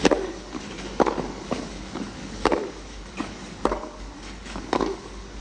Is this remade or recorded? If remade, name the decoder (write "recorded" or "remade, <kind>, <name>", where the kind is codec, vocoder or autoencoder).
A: remade, codec, DAC